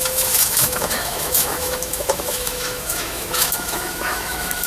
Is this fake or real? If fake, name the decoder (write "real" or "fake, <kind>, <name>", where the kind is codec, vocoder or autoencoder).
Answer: fake, autoencoder, DAC-VAE